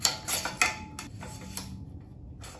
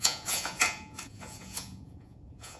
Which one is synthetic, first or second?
second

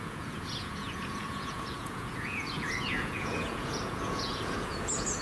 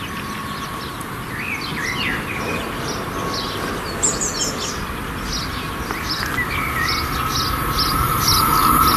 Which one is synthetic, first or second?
first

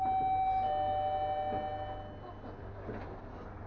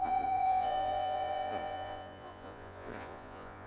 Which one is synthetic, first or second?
second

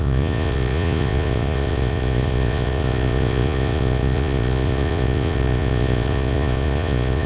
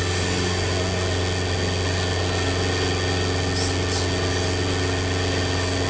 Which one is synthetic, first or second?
first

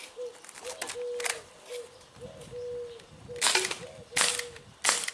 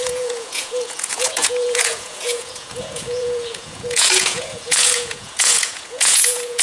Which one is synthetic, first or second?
second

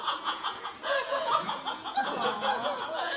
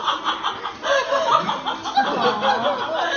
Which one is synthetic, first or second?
first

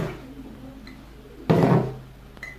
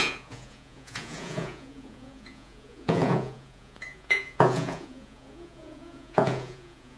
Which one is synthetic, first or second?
second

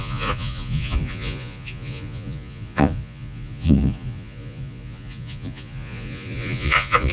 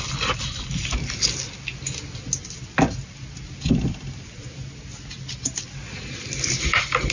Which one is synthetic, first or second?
first